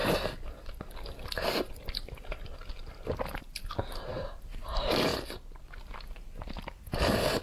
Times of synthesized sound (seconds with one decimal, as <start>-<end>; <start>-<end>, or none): none